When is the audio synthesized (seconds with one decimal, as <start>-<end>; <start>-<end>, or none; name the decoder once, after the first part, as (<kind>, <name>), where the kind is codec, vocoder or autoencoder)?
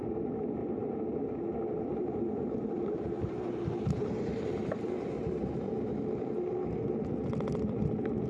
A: 0.6-1.4 (vocoder, BigVGAN v2); 1.9-5.7